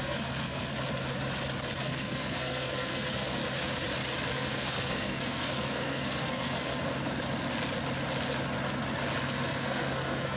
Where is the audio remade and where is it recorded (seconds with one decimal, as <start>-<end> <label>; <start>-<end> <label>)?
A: 0.0-0.7 remade; 0.7-1.8 recorded; 1.8-3.4 remade; 3.4-4.3 recorded; 4.3-6.9 remade; 6.9-9.2 recorded; 9.2-10.4 remade